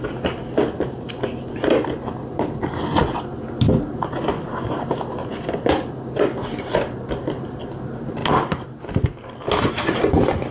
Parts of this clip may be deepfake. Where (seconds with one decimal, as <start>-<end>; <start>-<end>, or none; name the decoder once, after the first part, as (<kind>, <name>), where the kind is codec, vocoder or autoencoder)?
none